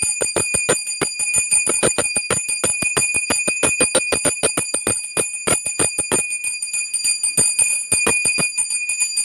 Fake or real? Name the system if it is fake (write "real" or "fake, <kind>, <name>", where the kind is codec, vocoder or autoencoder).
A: real